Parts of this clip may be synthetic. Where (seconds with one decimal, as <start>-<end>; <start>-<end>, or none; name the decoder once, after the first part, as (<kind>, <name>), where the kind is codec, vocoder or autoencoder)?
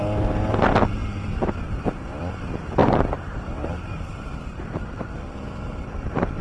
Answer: 2.8-6.4 (vocoder, BigVGAN v2)